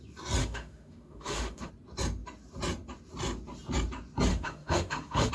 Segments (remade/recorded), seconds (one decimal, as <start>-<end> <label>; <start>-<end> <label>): 0.0-0.4 recorded; 0.4-1.7 remade; 1.7-4.3 recorded; 4.3-5.3 remade